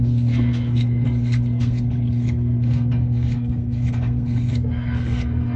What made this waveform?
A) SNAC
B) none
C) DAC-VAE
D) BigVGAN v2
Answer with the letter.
A